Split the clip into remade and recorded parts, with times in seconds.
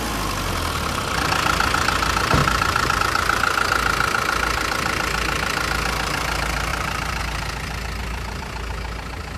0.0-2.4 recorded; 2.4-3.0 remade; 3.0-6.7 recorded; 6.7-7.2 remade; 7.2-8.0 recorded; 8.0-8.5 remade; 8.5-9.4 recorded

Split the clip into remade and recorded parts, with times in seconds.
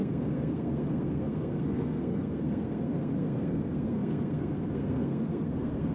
0.0-5.9 remade